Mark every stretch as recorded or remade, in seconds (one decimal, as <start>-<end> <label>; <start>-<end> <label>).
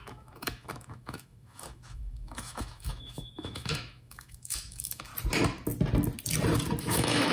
0.0-5.1 remade; 5.1-6.8 recorded; 6.8-7.3 remade